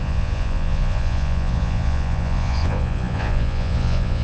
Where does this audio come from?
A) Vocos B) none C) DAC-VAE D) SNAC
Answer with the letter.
A